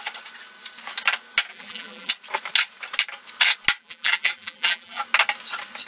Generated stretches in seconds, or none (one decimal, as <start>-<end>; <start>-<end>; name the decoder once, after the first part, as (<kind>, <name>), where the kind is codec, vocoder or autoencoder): 1.5-2.1 (vocoder, BigVGAN v2); 3.8-5.0